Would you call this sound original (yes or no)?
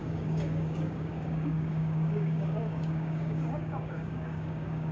no